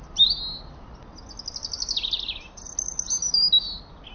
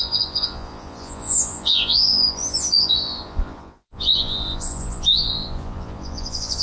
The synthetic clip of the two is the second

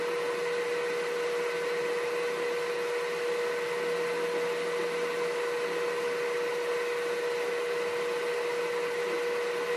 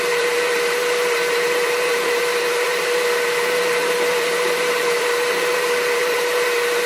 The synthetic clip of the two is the second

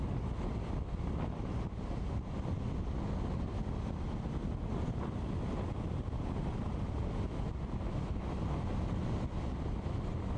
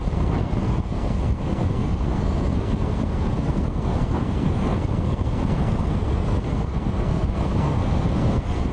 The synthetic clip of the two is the second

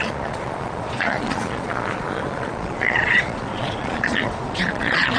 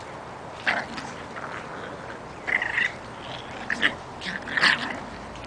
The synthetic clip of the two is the first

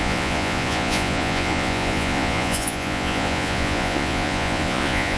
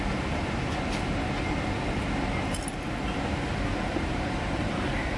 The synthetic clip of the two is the first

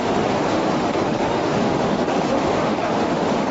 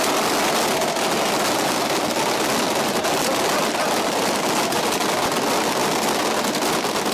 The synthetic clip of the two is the first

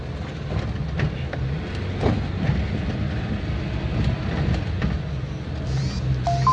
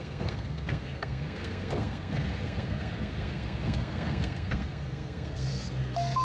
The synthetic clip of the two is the second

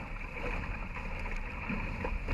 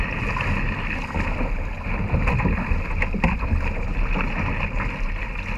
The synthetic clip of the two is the first